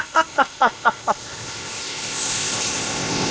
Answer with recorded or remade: remade